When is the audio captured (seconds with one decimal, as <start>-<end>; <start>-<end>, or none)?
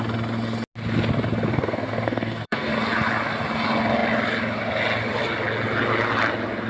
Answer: 0.0-1.5; 2.7-6.7